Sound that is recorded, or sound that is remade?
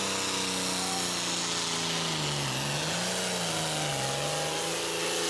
recorded